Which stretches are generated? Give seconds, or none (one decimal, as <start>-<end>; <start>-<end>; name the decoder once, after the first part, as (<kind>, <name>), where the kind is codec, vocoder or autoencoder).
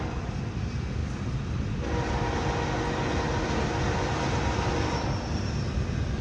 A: none